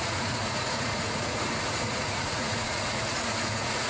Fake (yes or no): yes